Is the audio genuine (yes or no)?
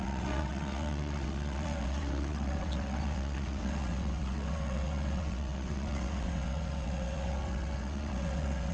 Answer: no